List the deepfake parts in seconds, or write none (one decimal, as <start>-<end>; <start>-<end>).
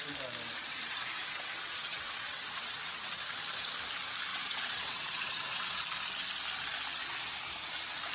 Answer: 0.6-3.2; 4.3-5.8